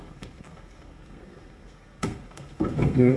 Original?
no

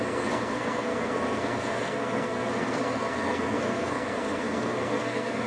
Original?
no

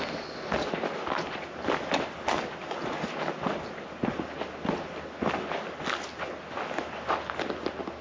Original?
yes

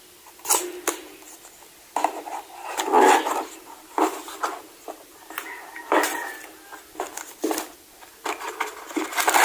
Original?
yes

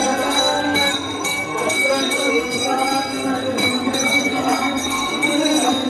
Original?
no